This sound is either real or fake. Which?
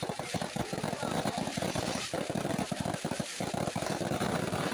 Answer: fake